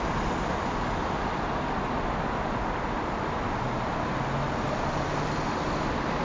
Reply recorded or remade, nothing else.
recorded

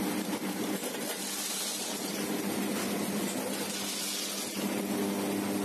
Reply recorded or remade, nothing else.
recorded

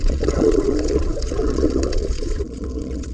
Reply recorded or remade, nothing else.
remade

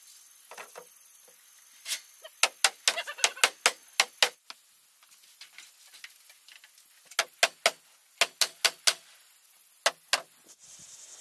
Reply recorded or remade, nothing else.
recorded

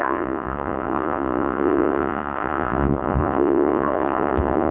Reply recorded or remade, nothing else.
remade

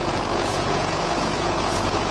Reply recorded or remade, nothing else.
remade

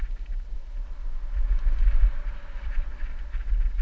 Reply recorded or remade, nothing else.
recorded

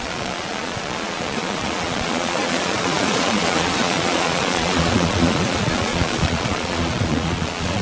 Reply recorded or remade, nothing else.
remade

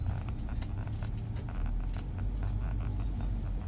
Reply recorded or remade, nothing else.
recorded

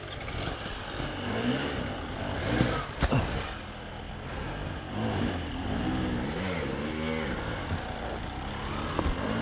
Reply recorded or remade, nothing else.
recorded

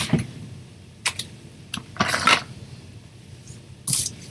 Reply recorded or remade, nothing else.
recorded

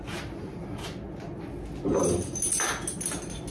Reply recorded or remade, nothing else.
recorded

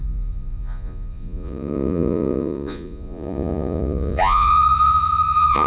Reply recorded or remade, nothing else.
remade